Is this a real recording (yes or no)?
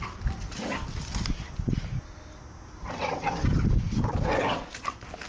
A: yes